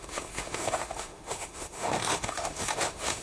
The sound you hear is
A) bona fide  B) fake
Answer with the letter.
B